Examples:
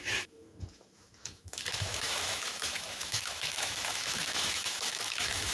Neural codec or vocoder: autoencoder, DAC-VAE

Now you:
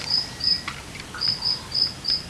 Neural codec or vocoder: vocoder, BigVGAN v2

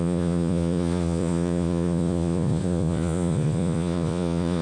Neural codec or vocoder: vocoder, Vocos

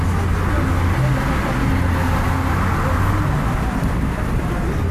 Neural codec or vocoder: none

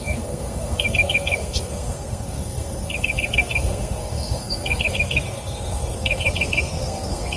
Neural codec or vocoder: codec, SNAC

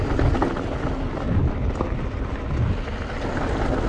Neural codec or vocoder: none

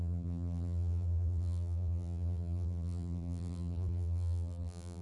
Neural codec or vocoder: vocoder, BigVGAN v2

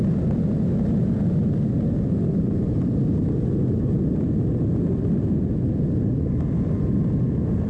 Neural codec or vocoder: none